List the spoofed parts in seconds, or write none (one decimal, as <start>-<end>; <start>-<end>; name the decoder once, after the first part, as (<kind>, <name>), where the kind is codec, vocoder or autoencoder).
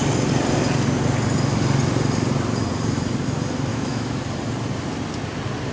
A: 3.7-4.2 (autoencoder, DAC-VAE)